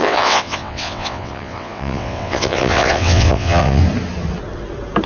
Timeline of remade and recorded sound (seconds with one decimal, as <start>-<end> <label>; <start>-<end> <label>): 0.0-3.8 remade; 3.8-5.1 recorded